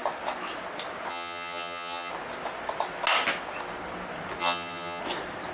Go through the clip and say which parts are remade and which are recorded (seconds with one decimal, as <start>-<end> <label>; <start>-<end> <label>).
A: 0.0-1.1 recorded; 1.1-2.1 remade; 2.1-4.4 recorded; 4.4-5.0 remade; 5.0-5.5 recorded